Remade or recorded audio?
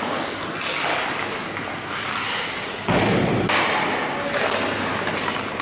recorded